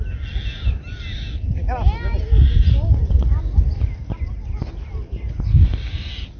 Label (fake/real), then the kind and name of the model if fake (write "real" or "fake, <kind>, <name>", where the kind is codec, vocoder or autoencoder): real